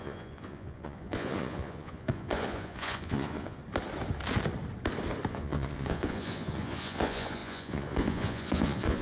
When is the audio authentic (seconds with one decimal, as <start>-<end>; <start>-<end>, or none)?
3.6-5.3